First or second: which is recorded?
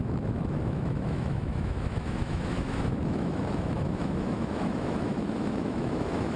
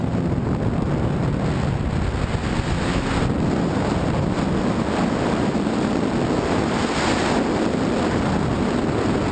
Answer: second